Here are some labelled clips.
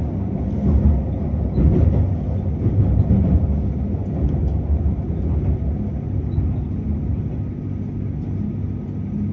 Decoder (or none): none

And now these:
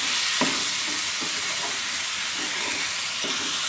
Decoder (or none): none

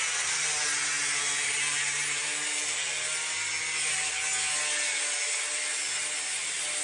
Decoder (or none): none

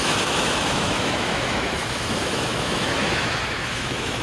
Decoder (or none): autoencoder, DAC-VAE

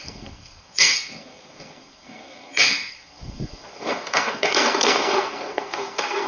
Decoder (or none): codec, SNAC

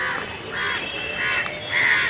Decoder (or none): none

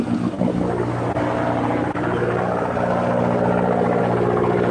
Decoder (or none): none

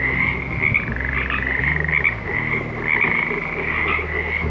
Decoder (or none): none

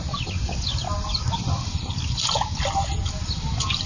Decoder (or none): none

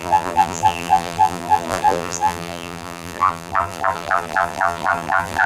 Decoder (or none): vocoder, BigVGAN v2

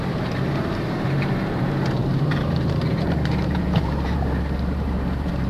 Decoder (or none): vocoder, BigVGAN v2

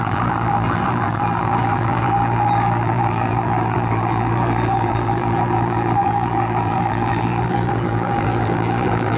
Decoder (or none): vocoder, BigVGAN v2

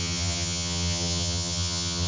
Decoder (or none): vocoder, HiFi-GAN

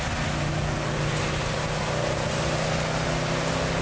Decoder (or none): none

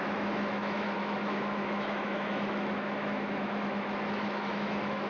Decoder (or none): autoencoder, DAC-VAE